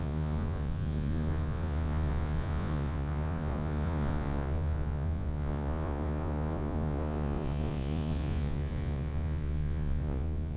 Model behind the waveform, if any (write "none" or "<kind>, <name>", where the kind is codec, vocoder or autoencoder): vocoder, Vocos